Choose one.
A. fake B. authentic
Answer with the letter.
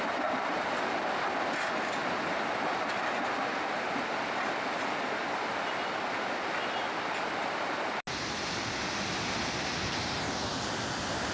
B